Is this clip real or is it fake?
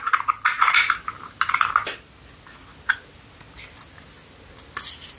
real